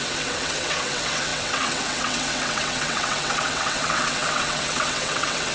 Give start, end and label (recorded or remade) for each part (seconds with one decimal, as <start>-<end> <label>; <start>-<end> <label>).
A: 0.0-5.5 remade